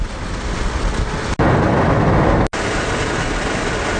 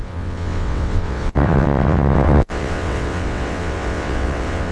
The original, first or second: first